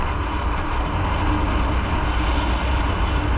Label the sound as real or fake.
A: real